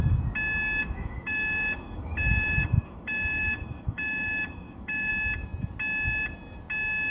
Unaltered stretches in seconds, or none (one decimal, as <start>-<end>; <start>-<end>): 0.0-0.8; 5.1-7.1